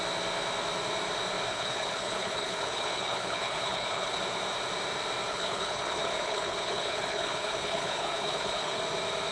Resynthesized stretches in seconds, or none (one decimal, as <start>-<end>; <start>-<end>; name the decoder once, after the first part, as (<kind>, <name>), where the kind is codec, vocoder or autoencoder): 1.5-4.2 (codec, HILCodec); 5.3-8.8